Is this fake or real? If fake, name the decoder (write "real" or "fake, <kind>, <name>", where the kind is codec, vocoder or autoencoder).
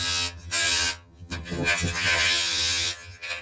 fake, vocoder, HiFi-GAN